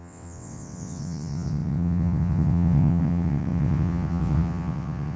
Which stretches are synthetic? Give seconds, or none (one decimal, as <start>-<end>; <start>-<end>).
0.0-5.2